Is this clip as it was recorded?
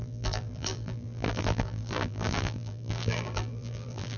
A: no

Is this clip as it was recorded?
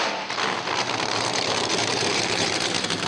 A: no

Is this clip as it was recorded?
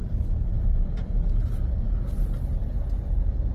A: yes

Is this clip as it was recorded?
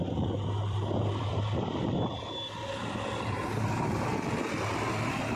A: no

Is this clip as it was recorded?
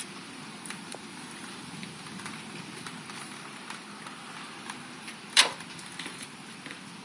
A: no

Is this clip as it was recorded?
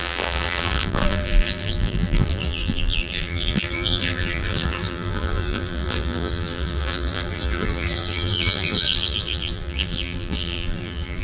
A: no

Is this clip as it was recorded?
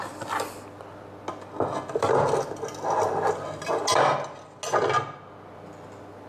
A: yes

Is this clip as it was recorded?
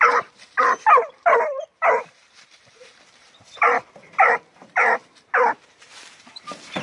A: no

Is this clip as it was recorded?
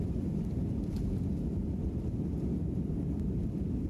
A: no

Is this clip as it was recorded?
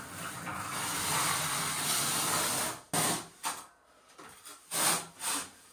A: yes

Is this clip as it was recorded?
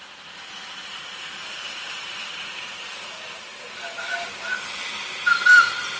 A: no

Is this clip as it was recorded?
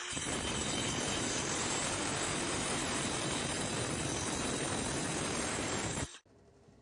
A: no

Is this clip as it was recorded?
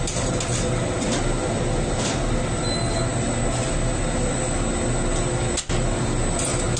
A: yes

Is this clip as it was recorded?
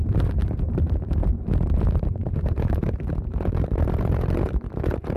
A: no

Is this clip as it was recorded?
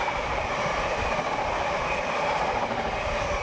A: no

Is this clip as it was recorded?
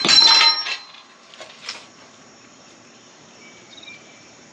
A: no